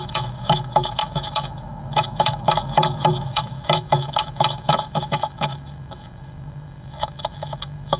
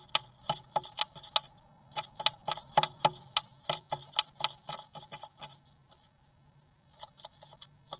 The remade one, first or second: first